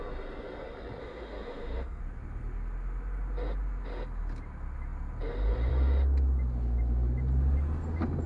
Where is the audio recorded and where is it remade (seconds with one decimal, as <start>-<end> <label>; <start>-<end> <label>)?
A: 0.0-1.0 recorded; 1.0-2.0 remade; 2.0-8.3 recorded